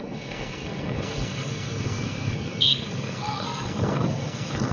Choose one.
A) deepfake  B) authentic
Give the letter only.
A